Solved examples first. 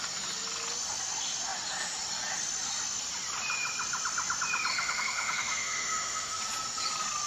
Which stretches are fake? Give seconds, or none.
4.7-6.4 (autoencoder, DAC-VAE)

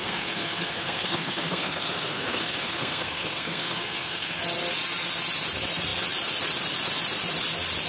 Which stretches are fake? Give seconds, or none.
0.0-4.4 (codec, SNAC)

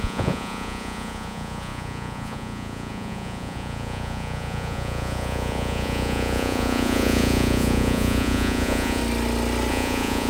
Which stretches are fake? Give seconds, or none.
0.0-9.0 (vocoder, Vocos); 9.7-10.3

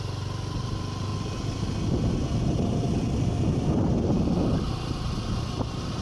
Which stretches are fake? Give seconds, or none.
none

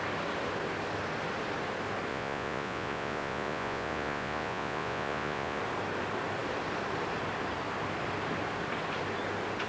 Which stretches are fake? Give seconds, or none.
2.1-5.6 (vocoder, Vocos)

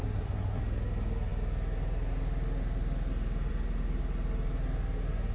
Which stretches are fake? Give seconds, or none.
0.0-0.6 (codec, SNAC)

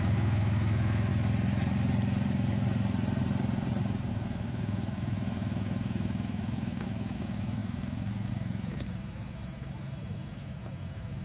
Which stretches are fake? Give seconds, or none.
0.0-1.1 (autoencoder, DAC-VAE); 4.1-11.2